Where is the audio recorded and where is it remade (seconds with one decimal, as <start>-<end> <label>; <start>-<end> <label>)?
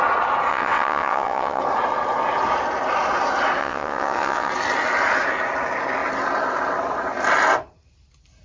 0.0-0.5 recorded; 0.5-1.6 remade; 1.6-3.6 recorded; 3.6-4.5 remade; 4.5-8.4 recorded